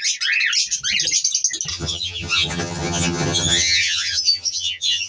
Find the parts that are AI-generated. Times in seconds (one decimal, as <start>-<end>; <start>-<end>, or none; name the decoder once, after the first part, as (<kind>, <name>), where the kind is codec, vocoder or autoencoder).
1.7-5.1 (vocoder, HiFi-GAN)